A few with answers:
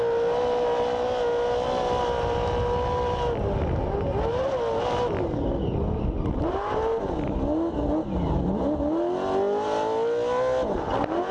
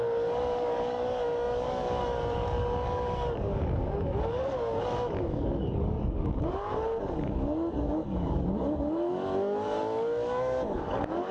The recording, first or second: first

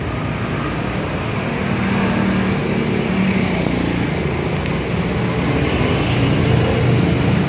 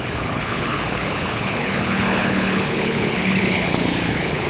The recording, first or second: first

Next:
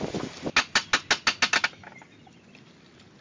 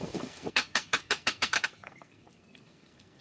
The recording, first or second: first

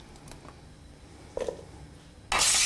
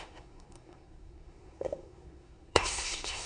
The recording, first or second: first